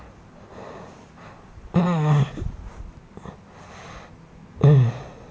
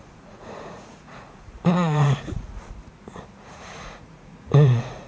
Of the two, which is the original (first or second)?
first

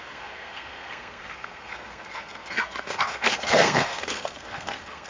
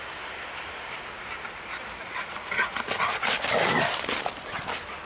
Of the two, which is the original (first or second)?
second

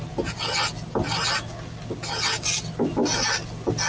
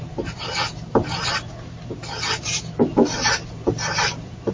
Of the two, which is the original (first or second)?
first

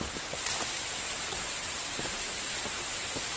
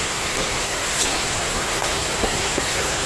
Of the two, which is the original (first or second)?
first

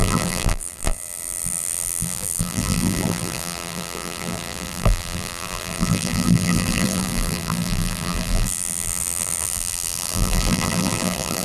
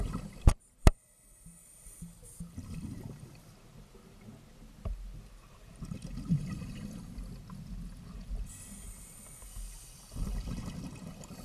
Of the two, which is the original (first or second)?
second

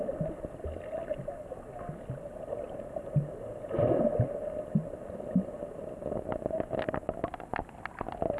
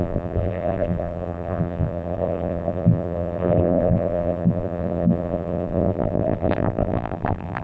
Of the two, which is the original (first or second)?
first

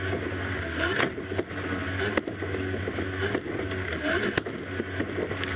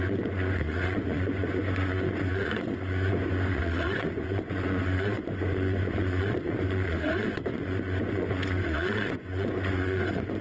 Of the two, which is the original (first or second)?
first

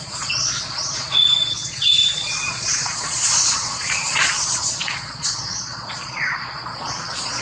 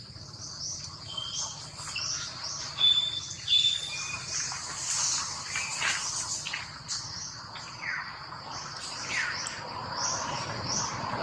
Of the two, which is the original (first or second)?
second